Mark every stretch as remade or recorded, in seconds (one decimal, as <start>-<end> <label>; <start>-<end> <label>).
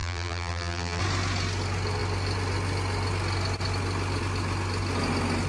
0.0-1.0 remade; 1.0-5.5 recorded